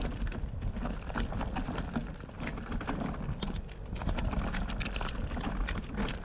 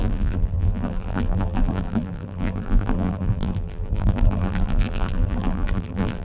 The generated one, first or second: second